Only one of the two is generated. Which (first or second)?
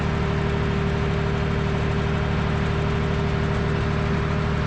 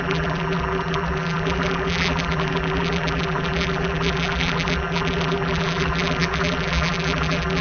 second